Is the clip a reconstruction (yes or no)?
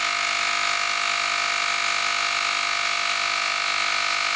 no